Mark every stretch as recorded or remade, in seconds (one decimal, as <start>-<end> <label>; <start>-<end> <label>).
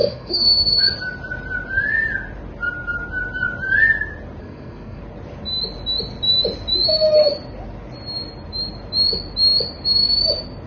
0.0-0.8 remade; 0.8-4.4 recorded; 4.4-5.0 remade; 5.0-10.7 recorded